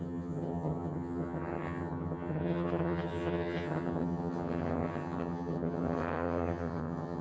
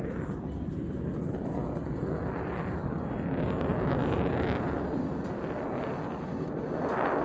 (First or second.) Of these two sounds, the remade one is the first